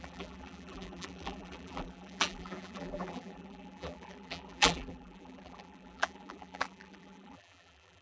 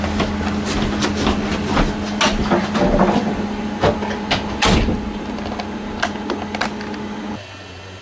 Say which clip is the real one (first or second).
second